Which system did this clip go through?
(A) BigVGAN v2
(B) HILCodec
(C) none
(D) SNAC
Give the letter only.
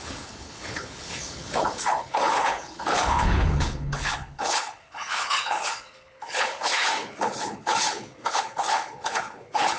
B